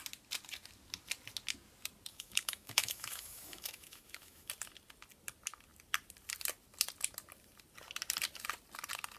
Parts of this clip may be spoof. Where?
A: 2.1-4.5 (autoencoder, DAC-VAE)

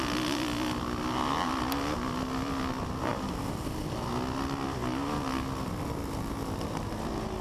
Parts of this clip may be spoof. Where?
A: none